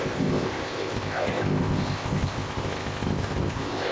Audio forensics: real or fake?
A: fake